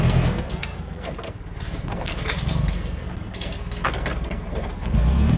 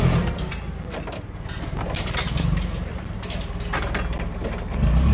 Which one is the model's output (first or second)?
first